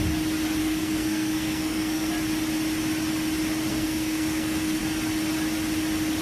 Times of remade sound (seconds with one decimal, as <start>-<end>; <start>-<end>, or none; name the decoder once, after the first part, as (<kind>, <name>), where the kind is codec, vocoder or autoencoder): 0.6-2.1 (codec, SNAC); 3.7-4.8